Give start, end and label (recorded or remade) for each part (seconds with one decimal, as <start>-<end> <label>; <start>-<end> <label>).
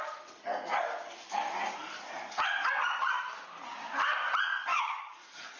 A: 0.0-4.7 recorded; 4.7-5.6 remade